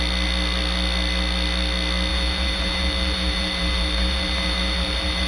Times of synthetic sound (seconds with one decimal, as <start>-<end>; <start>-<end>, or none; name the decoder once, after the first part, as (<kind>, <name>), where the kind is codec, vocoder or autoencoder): 2.1-5.3 (vocoder, BigVGAN v2)